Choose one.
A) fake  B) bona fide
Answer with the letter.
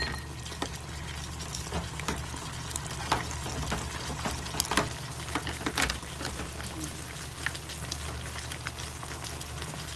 B